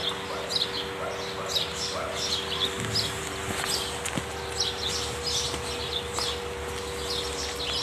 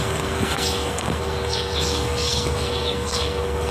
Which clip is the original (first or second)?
first